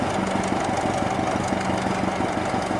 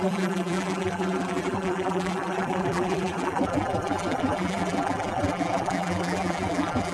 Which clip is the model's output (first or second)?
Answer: second